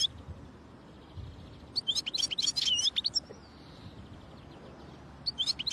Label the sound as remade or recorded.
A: recorded